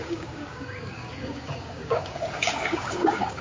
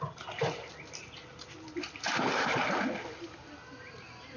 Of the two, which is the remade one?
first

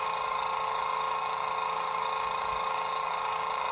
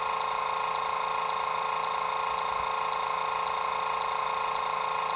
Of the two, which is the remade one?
first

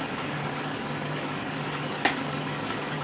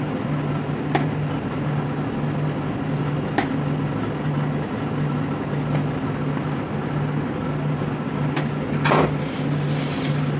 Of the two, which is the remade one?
first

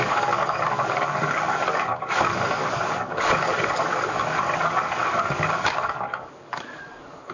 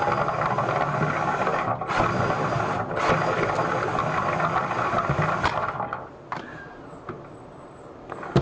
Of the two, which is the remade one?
first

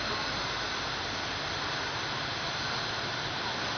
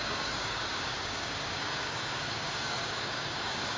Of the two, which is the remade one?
second